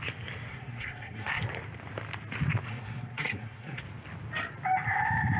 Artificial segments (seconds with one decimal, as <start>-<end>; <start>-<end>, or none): 0.5-1.4; 2.7-3.8